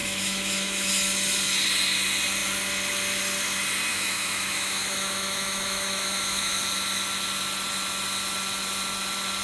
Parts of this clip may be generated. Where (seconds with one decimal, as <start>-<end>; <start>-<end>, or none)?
0.0-0.9; 3.9-6.6

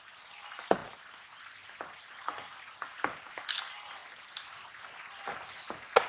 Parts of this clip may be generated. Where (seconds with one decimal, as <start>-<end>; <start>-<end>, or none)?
none

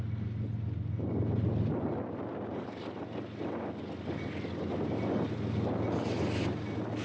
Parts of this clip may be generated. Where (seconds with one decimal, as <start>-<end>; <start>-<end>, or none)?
none